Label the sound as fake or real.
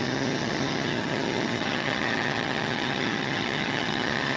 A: fake